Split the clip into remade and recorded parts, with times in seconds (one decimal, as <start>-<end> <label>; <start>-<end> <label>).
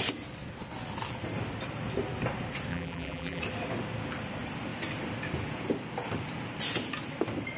0.0-2.7 recorded; 2.7-3.4 remade; 3.4-7.6 recorded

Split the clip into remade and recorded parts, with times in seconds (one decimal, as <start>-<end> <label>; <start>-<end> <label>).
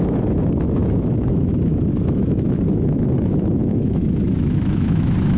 0.0-5.4 remade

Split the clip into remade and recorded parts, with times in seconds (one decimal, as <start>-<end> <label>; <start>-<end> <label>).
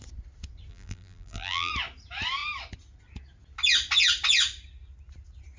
0.0-0.7 recorded; 0.7-1.7 remade; 1.7-5.6 recorded